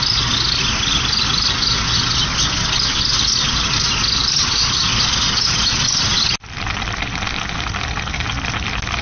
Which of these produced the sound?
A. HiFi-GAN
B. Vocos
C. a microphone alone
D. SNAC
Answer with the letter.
C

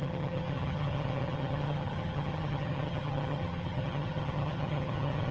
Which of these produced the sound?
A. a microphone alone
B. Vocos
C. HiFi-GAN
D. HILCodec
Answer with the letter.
C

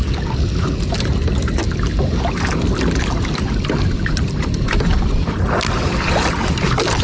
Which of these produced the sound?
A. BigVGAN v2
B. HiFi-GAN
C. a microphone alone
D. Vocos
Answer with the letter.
C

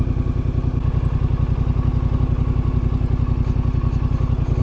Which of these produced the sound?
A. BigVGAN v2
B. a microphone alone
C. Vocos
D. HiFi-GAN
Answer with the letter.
B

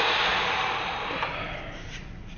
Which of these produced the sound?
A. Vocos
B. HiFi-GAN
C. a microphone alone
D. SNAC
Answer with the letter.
C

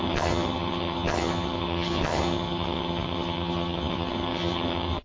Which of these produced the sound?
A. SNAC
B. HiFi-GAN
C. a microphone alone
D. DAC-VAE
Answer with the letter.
B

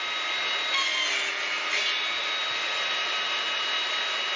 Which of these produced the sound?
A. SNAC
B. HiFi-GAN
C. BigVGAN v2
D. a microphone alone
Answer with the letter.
D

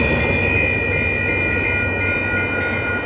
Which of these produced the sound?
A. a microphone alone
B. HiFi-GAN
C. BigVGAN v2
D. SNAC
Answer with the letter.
A